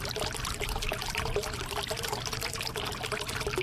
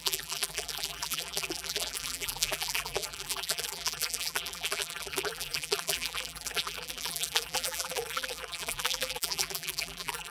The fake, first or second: second